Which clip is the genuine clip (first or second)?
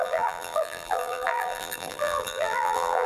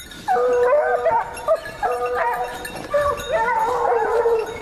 second